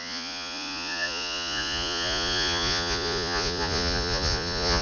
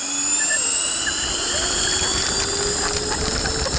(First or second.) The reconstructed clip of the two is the first